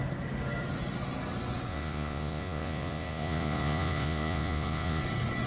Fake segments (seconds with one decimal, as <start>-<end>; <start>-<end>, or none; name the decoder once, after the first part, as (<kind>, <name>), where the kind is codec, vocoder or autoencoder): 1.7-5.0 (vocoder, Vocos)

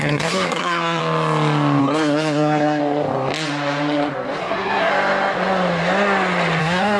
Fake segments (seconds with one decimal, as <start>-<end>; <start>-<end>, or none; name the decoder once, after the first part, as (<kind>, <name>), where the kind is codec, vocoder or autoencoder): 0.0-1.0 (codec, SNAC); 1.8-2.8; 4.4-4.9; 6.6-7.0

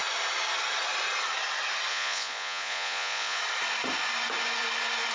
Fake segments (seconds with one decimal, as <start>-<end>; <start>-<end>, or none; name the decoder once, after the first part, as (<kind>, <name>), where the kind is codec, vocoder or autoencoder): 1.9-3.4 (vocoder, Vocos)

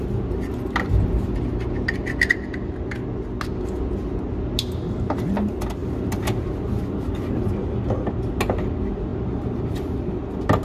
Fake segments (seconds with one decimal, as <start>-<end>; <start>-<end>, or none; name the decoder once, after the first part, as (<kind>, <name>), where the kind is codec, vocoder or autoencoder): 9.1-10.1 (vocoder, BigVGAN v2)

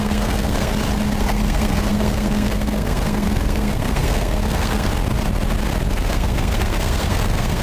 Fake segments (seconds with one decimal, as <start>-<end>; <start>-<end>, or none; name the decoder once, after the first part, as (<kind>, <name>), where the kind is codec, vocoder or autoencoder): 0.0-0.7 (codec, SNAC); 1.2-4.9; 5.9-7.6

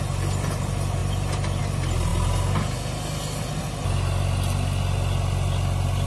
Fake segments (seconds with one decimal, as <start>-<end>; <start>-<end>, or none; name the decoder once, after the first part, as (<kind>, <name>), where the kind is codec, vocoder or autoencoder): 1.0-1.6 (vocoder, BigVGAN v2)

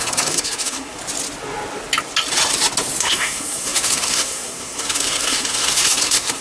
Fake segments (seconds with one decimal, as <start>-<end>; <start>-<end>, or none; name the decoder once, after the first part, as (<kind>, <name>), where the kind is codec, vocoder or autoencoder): 0.0-1.0 (codec, SNAC); 3.0-6.4